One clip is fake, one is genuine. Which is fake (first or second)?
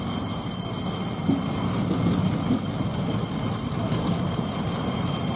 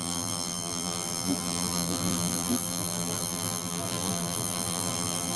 second